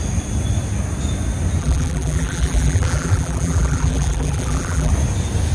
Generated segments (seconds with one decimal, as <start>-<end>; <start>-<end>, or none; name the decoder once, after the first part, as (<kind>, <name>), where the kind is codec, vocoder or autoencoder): 1.6-4.9 (vocoder, BigVGAN v2)